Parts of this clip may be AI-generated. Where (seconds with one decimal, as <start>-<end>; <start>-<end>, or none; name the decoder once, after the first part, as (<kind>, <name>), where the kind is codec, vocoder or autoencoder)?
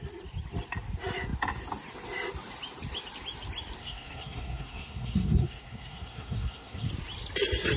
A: 3.8-6.9 (codec, SNAC)